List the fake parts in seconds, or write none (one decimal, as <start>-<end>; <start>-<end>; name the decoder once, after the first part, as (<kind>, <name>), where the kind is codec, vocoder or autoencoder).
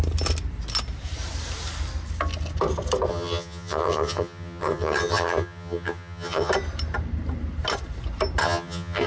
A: 3.1-6.5 (vocoder, HiFi-GAN); 8.4-9.1